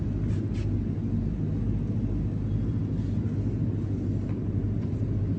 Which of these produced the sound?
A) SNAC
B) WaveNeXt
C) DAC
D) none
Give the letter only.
D